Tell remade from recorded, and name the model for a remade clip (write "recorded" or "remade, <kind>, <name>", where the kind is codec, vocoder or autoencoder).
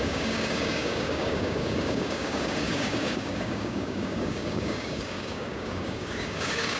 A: remade, codec, DAC